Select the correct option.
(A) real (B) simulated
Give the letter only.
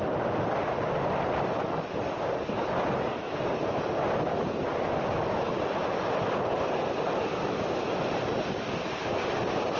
A